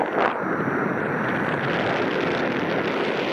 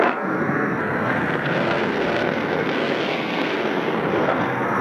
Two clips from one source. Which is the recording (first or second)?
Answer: first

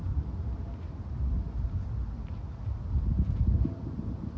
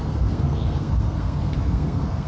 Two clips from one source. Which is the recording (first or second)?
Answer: first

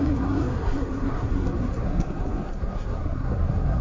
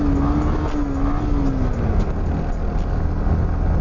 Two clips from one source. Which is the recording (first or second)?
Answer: second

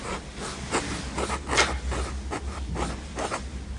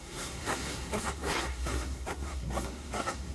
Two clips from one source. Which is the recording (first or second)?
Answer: first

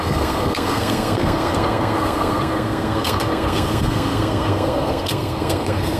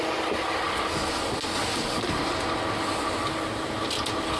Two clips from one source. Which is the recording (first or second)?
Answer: second